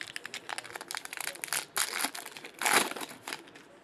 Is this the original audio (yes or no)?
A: yes